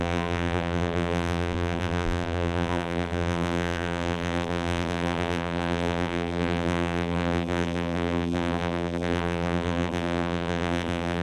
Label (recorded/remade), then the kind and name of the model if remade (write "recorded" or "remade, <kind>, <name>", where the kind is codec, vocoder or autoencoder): remade, vocoder, BigVGAN v2